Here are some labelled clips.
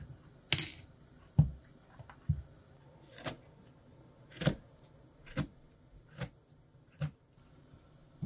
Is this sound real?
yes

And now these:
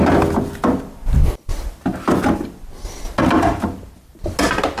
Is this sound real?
yes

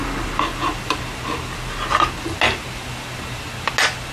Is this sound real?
yes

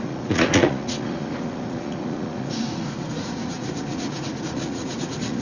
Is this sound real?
no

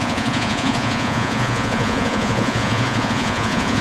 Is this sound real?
no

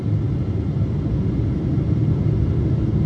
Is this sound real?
yes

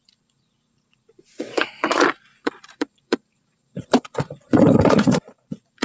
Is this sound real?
no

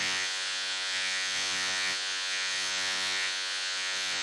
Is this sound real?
no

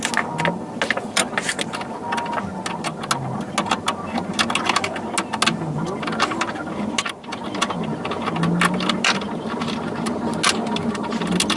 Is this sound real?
yes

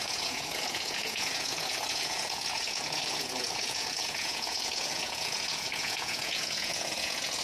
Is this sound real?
no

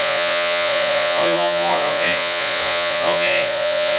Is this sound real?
no